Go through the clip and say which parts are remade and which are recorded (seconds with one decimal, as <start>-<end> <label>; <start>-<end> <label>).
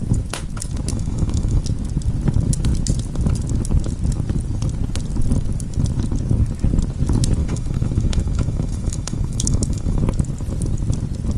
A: 0.0-0.9 recorded; 0.9-1.6 remade; 1.6-7.4 recorded; 7.4-10.0 remade; 10.0-11.4 recorded